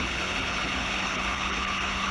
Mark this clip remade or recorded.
remade